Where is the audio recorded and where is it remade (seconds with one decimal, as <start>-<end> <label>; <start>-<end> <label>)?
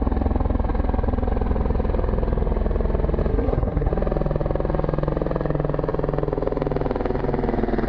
0.0-3.3 recorded; 3.3-3.9 remade; 3.9-7.9 recorded